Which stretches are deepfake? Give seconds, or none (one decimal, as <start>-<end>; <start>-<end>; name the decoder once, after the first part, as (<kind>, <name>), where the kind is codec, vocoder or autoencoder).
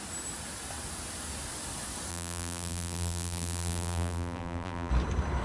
2.1-4.9 (vocoder, BigVGAN v2)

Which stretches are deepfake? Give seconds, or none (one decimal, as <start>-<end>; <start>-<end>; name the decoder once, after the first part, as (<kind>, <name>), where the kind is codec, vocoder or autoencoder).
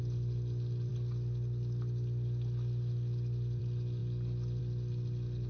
none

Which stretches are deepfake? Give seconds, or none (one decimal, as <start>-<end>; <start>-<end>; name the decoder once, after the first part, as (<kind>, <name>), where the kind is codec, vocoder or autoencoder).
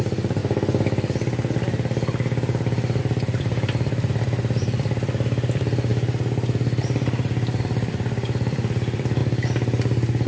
0.0-0.4 (vocoder, BigVGAN v2); 3.0-10.3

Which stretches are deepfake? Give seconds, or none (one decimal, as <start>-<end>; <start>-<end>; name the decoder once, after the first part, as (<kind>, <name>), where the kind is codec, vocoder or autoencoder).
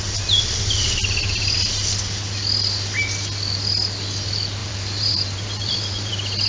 4.6-6.1 (vocoder, BigVGAN v2)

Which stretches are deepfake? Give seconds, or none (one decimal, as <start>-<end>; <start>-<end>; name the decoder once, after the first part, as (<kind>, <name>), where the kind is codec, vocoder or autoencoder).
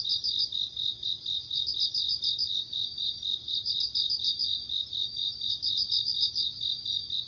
0.0-0.9 (vocoder, BigVGAN v2); 1.7-2.5; 3.5-3.9; 6.1-7.3